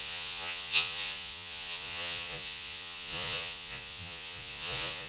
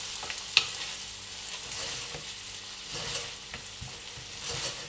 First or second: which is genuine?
second